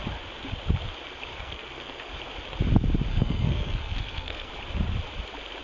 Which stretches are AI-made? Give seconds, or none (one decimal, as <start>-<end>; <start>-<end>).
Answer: 1.3-2.1; 3.1-4.5